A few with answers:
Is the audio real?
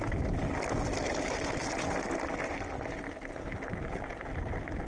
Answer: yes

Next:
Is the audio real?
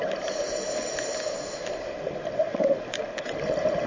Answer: yes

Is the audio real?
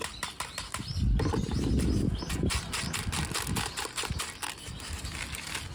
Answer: yes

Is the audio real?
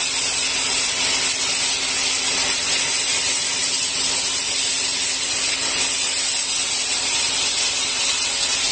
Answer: yes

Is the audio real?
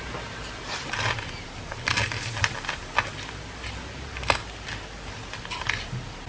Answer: yes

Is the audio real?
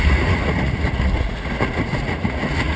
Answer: no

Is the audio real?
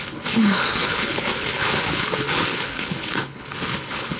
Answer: no